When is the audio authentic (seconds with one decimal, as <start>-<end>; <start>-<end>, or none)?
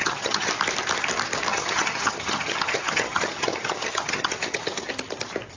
0.5-1.5; 4.9-5.6